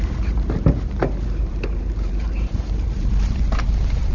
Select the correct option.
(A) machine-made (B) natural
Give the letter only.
A